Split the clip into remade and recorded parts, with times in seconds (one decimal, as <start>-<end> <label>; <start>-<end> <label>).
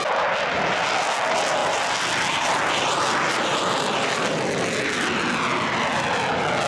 0.0-6.7 recorded